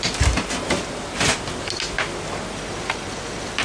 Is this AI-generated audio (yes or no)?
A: no